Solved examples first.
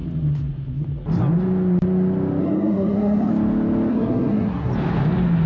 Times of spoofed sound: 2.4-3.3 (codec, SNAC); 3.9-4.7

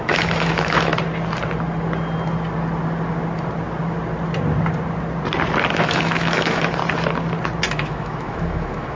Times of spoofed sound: 0.0-0.9 (autoencoder, DAC-VAE); 5.8-6.8; 7.7-9.0